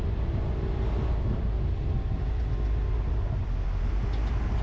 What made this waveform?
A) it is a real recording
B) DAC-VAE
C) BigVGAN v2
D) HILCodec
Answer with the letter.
A